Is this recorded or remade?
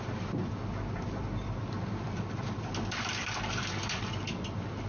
remade